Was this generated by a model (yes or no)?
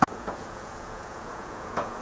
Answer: yes